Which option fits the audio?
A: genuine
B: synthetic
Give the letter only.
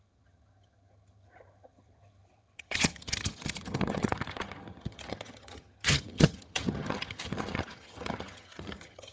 B